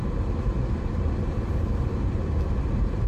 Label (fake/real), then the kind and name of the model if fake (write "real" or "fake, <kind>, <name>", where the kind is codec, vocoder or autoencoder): real